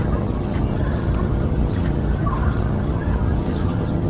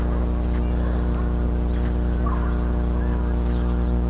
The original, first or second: second